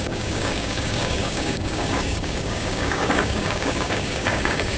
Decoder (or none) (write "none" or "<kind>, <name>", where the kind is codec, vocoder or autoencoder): codec, DAC